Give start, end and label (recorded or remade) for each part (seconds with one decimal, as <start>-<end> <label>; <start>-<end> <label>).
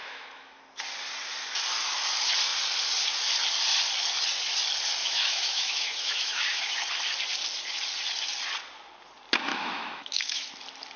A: 0.0-0.6 remade; 0.6-5.0 recorded; 5.0-6.8 remade; 6.8-9.5 recorded; 9.5-10.5 remade; 10.5-11.0 recorded